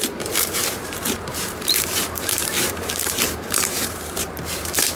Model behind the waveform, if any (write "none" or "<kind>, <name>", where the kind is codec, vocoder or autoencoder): vocoder, BigVGAN v2